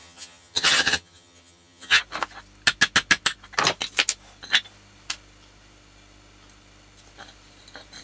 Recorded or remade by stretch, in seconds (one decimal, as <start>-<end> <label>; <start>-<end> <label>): 0.0-2.0 remade; 2.0-8.0 recorded